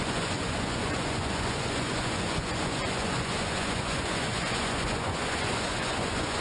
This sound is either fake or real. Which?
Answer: fake